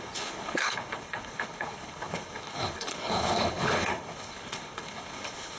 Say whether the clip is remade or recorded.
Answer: remade